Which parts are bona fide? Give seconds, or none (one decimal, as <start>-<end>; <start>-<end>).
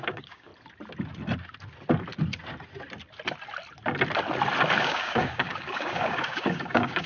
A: 0.5-4.8